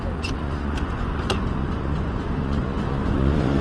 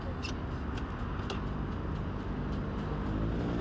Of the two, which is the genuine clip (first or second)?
second